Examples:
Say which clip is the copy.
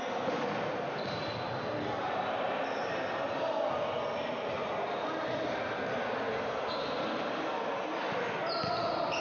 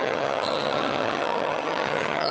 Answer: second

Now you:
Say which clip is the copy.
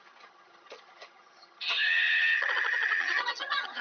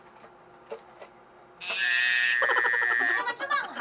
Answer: first